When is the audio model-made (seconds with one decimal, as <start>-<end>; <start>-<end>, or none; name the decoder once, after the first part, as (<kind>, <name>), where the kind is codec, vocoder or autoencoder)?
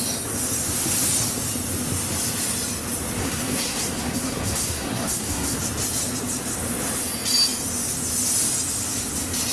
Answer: 3.2-5.6 (codec, SNAC)